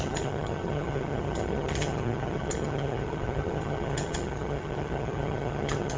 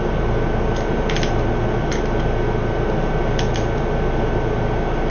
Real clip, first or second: second